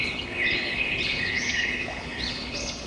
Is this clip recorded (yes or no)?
no